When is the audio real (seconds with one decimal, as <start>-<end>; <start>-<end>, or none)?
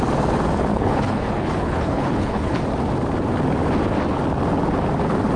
0.0-0.7; 2.6-5.4